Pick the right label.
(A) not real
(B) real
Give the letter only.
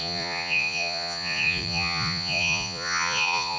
A